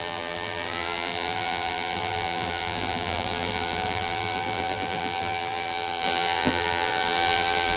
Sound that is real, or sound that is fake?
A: fake